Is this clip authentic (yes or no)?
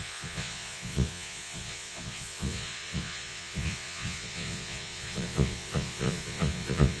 no